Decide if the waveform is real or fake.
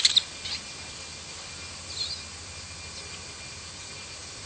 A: real